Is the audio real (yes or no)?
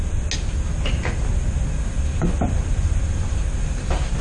yes